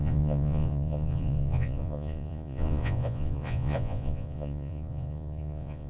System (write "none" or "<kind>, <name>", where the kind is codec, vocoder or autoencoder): vocoder, Vocos